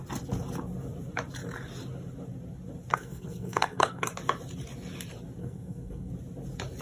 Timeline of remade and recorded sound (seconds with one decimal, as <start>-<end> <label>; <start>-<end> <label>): 0.0-2.9 recorded; 2.9-4.1 remade; 4.1-5.4 recorded; 5.4-6.1 remade; 6.1-6.8 recorded